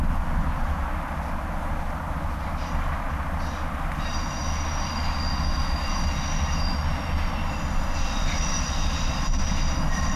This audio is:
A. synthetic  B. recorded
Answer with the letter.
B